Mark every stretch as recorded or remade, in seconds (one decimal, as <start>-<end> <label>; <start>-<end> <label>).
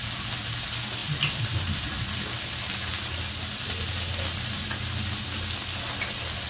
0.0-6.5 recorded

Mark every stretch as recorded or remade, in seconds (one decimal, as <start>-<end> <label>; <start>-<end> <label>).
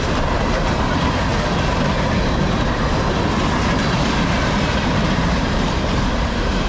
0.0-1.3 remade; 1.3-3.8 recorded; 3.8-6.7 remade